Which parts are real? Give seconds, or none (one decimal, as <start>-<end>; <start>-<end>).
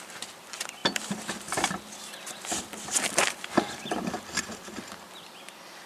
0.0-0.8; 1.7-5.9